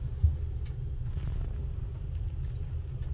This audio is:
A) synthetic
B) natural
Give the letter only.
B